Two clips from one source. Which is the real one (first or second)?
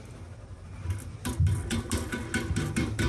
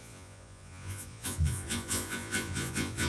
first